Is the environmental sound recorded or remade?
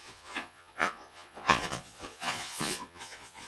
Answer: remade